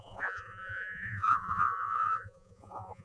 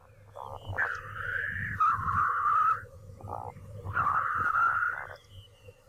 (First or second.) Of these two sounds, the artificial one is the first